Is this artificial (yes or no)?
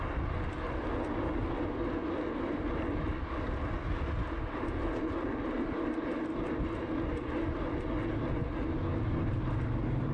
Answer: no